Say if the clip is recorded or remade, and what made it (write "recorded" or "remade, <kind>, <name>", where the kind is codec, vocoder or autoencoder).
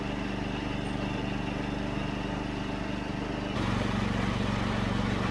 recorded